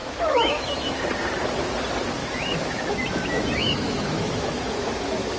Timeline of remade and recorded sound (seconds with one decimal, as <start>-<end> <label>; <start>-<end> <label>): 0.0-0.9 remade; 0.9-2.2 recorded; 2.2-5.4 remade